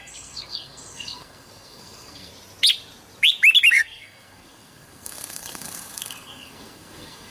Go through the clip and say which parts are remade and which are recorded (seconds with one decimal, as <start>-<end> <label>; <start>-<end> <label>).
0.0-2.3 remade; 2.3-3.7 recorded; 3.7-7.3 remade